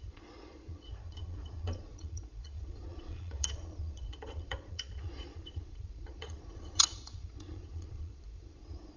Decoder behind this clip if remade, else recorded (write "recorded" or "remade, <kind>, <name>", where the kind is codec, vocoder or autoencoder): remade, vocoder, Vocos